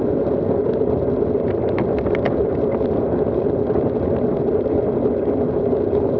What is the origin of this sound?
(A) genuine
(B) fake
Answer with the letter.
A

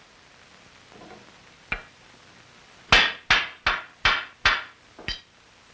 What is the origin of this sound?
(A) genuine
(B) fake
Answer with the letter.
A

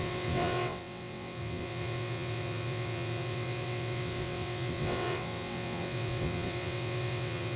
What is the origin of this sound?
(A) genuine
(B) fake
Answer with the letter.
B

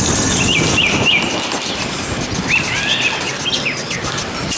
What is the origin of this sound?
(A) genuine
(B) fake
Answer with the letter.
A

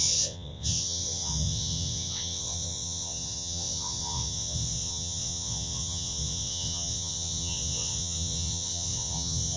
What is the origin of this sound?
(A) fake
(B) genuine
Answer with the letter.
A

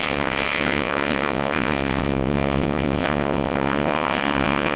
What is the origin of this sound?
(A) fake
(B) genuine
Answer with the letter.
A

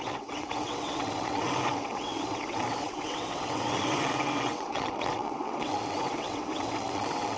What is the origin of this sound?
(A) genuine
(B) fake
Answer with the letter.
B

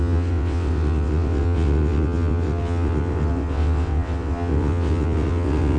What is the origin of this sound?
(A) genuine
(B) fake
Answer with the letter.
B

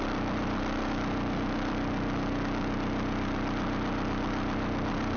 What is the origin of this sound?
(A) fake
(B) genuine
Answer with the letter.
B